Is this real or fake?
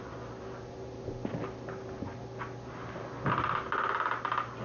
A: real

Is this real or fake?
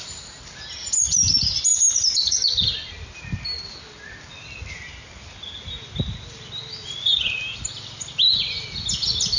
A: real